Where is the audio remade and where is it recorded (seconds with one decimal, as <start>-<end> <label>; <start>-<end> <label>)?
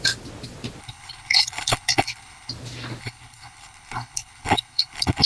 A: 0.0-0.8 recorded; 0.8-2.5 remade; 2.5-3.0 recorded; 3.0-5.3 remade